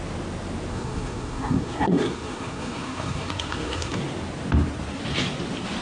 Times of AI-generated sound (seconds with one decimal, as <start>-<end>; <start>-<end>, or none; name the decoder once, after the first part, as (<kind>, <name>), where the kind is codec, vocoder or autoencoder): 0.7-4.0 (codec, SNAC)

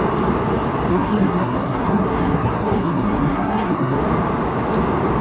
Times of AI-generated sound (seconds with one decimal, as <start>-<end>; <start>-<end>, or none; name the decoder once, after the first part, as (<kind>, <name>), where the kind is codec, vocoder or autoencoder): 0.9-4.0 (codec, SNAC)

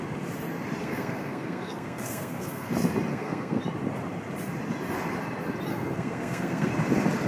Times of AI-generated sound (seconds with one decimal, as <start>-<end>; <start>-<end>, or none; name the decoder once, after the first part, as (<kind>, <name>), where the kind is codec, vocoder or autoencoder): 0.8-2.7 (codec, SNAC); 3.1-3.6; 5.7-6.7

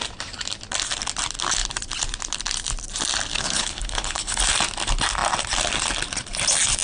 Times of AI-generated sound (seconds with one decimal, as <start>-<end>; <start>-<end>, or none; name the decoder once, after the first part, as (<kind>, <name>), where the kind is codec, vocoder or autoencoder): 3.3-4.4 (codec, HILCodec)